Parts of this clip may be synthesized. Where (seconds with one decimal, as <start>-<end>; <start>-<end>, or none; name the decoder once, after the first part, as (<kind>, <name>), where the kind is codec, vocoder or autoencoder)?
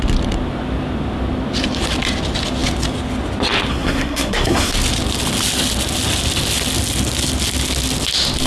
3.7-4.7 (codec, SNAC)